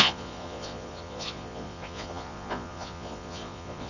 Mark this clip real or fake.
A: fake